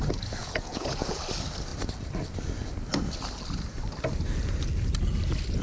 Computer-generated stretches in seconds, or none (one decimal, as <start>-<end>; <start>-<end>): 0.4-1.2